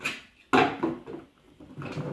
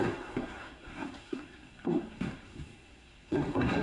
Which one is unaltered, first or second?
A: first